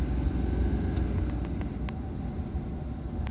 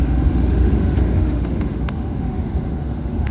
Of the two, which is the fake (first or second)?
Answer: second